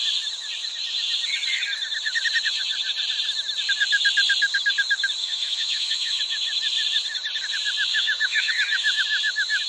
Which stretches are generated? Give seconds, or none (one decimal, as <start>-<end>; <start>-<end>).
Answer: 5.2-6.2; 7.9-8.5